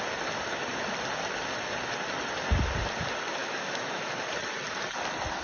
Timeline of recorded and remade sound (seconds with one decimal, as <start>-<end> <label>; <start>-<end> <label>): 0.0-3.4 recorded; 3.4-4.1 remade; 4.1-5.4 recorded